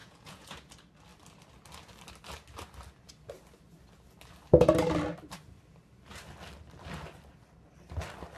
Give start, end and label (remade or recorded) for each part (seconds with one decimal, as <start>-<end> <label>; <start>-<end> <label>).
0.0-0.7 remade; 0.7-8.4 recorded